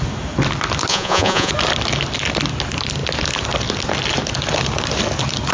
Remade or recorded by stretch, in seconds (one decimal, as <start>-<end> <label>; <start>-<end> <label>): 0.0-0.9 recorded; 0.9-1.5 remade; 1.5-5.5 recorded